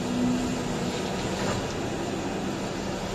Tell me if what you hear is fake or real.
real